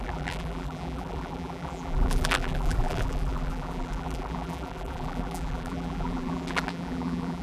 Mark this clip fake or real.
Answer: fake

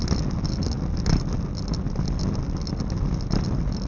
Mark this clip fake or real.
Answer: real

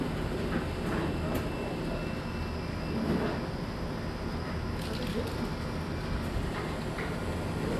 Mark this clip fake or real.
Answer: real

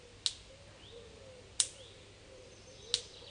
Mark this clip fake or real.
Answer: real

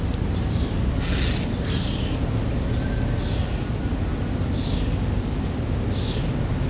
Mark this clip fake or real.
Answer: real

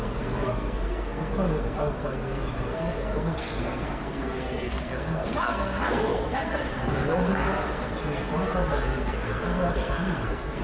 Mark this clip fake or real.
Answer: fake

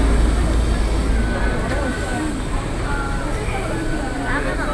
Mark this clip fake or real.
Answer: real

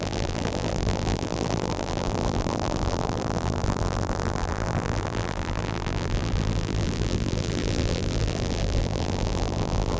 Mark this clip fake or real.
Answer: fake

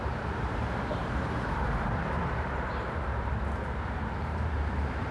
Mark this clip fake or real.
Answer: fake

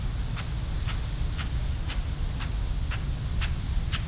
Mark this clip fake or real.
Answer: real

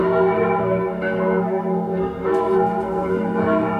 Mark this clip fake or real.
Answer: fake